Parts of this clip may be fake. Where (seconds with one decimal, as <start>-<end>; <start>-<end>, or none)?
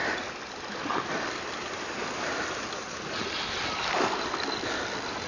none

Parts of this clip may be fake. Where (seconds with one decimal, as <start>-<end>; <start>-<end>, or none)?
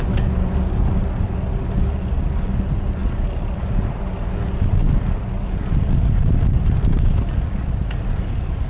none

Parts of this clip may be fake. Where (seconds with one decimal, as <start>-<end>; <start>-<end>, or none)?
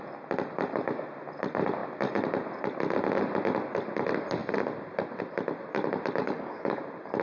6.2-6.8